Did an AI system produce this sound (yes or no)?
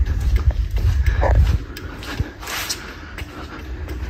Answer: no